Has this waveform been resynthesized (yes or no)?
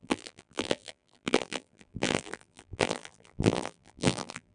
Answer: yes